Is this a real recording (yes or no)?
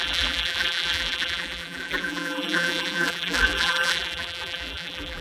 no